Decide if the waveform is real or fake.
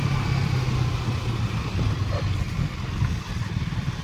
real